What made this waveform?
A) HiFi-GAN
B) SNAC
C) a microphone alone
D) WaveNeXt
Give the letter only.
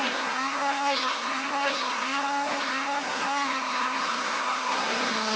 B